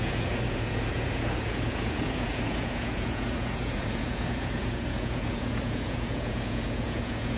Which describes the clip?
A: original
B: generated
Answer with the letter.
B